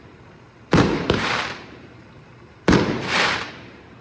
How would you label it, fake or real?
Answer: fake